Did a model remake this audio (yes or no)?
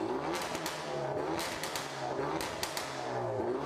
no